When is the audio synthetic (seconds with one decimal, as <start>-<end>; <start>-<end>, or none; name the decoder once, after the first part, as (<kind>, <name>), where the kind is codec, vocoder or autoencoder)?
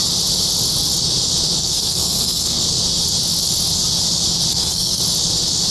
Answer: 1.6-2.6 (codec, SNAC); 4.5-5.0